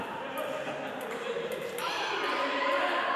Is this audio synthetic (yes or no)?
yes